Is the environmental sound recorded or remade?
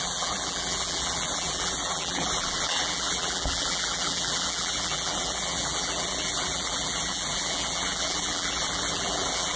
remade